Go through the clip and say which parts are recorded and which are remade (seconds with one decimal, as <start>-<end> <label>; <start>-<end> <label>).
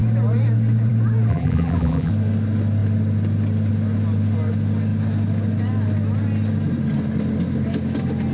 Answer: 0.0-1.3 recorded; 1.3-2.1 remade; 2.1-8.3 recorded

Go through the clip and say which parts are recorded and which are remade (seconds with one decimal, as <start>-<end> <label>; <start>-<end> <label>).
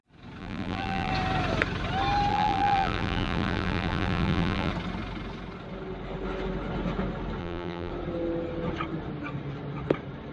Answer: 0.0-0.4 recorded; 0.4-1.1 remade; 1.1-2.3 recorded; 2.3-4.7 remade; 4.7-7.4 recorded; 7.4-7.9 remade; 7.9-10.3 recorded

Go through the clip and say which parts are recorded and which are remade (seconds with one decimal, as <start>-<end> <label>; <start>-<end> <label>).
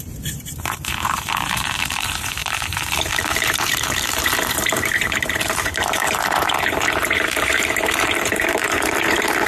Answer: 0.0-9.5 remade